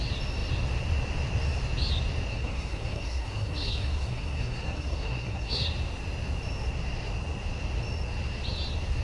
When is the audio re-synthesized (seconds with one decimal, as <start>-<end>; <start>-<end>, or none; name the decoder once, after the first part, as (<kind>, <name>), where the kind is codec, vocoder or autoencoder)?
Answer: 2.3-5.7 (codec, SNAC)